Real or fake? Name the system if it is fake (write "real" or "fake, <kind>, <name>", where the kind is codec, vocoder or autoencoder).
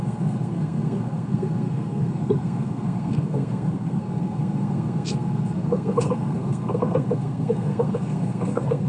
fake, codec, SNAC